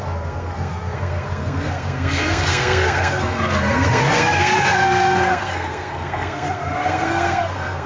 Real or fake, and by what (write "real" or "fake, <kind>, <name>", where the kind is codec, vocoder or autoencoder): fake, codec, SNAC